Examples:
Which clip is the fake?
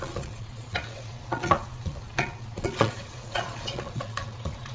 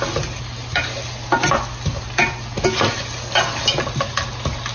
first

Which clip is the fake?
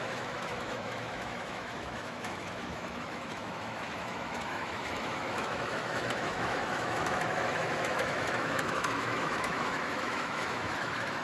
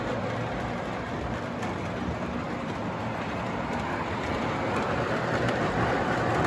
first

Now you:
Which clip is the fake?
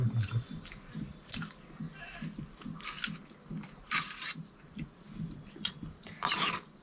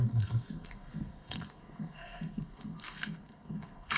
second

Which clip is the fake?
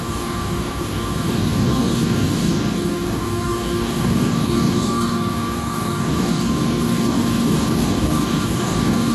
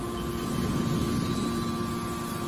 first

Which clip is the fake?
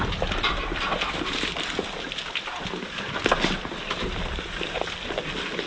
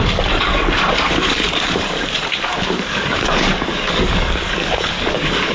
second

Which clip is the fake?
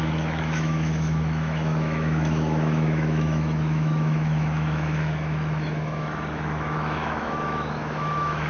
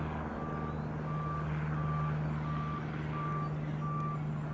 first